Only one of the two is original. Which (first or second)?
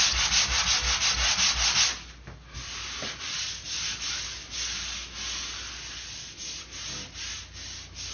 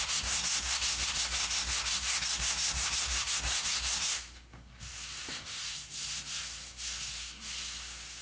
first